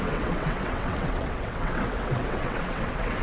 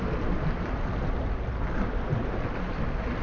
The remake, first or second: first